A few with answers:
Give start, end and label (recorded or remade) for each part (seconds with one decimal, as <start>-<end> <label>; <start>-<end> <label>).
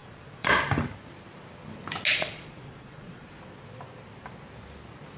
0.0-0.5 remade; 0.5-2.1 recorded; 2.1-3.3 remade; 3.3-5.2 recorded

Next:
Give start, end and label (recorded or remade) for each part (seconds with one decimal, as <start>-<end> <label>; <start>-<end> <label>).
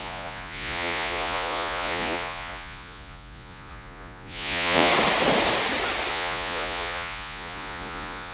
0.0-4.9 remade; 4.9-6.1 recorded; 6.1-8.3 remade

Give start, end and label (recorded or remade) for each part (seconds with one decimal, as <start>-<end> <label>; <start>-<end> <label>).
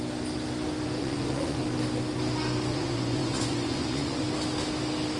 0.0-1.0 recorded; 1.0-1.6 remade; 1.6-2.7 recorded; 2.7-4.2 remade; 4.2-5.2 recorded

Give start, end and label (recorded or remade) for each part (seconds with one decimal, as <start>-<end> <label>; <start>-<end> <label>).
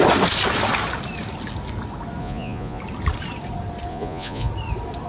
0.0-2.2 recorded; 2.2-2.8 remade; 2.8-3.9 recorded; 3.9-4.5 remade; 4.5-5.1 recorded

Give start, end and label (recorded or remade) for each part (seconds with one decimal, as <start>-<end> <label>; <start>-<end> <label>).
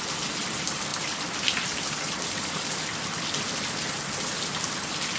0.0-5.2 recorded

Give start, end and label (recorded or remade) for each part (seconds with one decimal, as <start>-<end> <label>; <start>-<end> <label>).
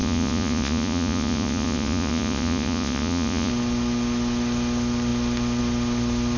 0.0-3.5 remade; 3.5-6.4 recorded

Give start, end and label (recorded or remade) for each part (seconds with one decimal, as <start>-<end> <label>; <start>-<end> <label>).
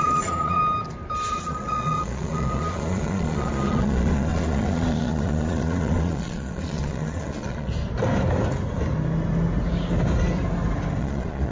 0.0-0.6 remade; 0.6-1.3 recorded; 1.3-7.7 remade; 7.7-11.0 recorded; 11.0-11.5 remade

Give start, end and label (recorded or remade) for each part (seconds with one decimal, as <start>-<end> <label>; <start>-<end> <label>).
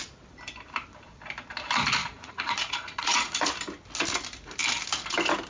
0.0-2.0 recorded; 2.0-3.5 remade; 3.5-5.5 recorded